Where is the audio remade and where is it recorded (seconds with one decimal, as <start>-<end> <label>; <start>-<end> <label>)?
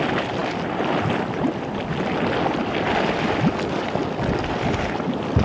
0.0-5.4 recorded